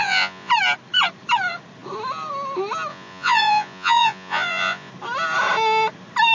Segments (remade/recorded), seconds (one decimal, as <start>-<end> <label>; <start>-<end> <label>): 0.0-0.5 remade; 0.5-2.9 recorded; 2.9-4.9 remade; 4.9-6.3 recorded